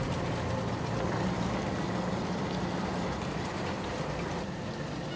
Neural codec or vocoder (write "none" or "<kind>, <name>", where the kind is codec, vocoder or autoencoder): none